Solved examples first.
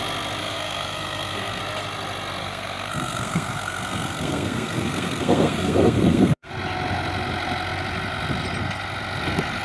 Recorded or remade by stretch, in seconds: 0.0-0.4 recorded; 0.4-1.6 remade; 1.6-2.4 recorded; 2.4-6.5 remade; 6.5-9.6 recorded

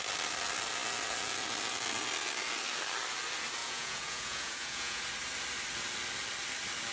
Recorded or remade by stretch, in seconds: 0.0-3.6 recorded; 3.6-5.0 remade; 5.0-6.9 recorded

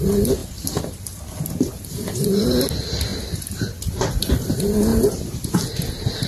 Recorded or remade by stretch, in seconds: 0.0-0.4 recorded; 0.4-2.4 remade; 2.4-3.1 recorded; 3.1-4.3 remade; 4.3-4.9 recorded; 4.9-5.6 remade; 5.6-6.3 recorded

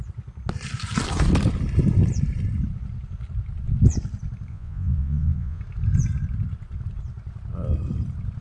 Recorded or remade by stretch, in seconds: 0.0-4.5 recorded; 4.5-5.6 remade; 5.6-8.4 recorded